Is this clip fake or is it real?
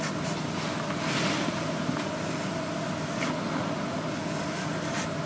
real